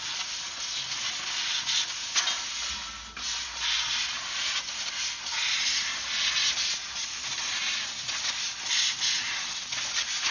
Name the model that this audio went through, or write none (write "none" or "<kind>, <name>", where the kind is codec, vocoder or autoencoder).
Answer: none